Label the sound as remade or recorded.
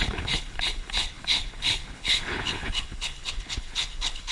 remade